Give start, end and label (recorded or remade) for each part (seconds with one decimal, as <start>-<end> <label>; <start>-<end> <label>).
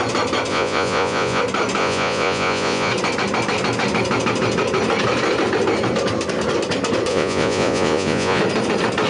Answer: 0.0-0.5 recorded; 0.5-1.4 remade; 1.4-1.8 recorded; 1.8-2.9 remade; 2.9-7.1 recorded; 7.1-8.4 remade; 8.4-9.1 recorded